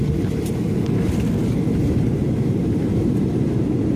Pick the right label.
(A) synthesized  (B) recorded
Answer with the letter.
A